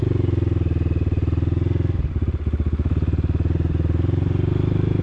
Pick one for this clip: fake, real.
real